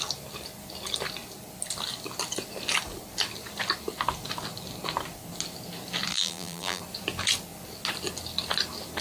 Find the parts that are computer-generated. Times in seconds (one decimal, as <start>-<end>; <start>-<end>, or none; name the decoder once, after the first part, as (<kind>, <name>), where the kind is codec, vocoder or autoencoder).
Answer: 6.1-6.8 (vocoder, BigVGAN v2)

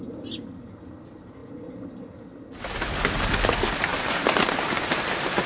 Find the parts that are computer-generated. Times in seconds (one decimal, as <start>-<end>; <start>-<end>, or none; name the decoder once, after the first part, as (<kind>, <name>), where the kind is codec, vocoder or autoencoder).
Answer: 3.9-5.0 (vocoder, BigVGAN v2)

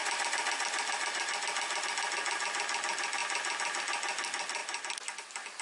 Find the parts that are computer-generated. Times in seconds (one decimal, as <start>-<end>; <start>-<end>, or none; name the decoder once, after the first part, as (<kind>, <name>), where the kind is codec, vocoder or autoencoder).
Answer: none